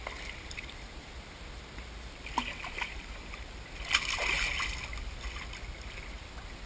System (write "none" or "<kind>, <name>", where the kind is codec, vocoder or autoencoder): none